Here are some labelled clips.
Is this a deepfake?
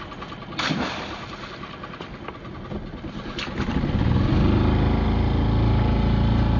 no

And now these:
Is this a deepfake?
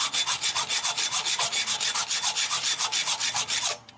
no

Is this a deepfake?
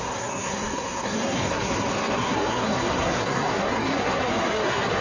yes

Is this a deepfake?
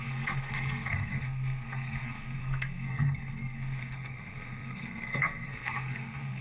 yes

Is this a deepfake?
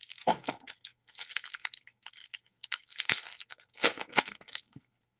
yes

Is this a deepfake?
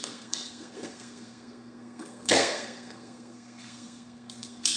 yes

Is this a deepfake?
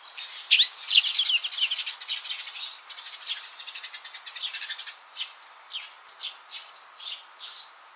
no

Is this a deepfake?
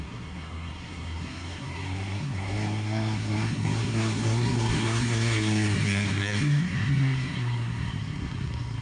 yes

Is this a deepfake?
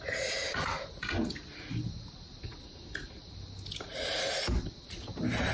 no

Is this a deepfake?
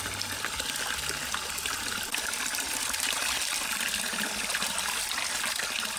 no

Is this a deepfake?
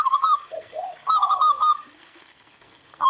yes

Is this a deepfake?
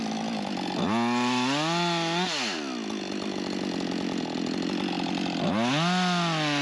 no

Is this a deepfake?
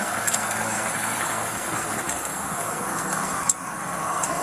yes